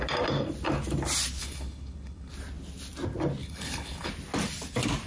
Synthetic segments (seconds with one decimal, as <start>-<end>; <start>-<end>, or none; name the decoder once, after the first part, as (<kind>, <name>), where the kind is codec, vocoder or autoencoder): 1.4-2.3 (codec, HILCodec); 3.4-4.1